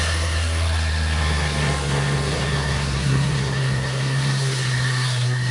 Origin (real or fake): fake